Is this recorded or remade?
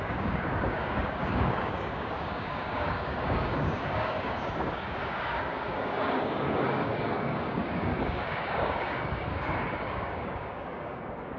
remade